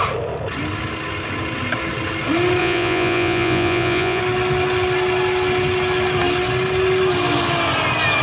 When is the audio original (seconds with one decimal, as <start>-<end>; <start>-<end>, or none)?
0.0-2.6; 4.2-8.2